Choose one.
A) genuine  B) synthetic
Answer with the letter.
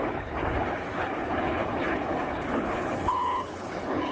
B